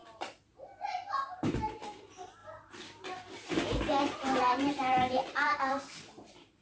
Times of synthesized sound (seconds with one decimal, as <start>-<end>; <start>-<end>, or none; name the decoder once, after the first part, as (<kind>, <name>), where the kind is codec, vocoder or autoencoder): 1.3-2.4 (vocoder, BigVGAN v2); 4.0-6.6